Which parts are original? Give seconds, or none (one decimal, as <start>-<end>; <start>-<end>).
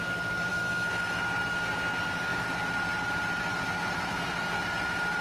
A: 0.0-0.5; 1.2-5.2